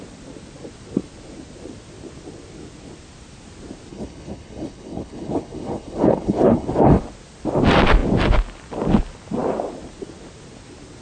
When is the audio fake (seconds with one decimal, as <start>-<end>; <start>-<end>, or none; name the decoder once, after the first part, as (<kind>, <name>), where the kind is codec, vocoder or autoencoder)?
3.9-7.0 (codec, HILCodec)